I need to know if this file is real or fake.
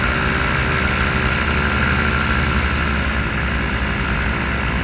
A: real